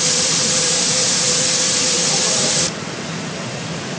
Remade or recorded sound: remade